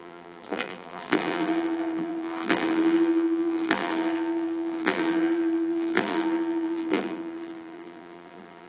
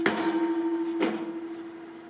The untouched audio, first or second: second